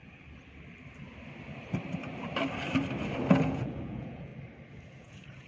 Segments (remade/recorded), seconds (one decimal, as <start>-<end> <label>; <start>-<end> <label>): 0.0-3.3 recorded; 3.3-4.3 remade; 4.3-5.0 recorded; 5.0-5.5 remade